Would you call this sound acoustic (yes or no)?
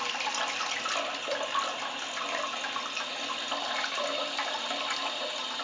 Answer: yes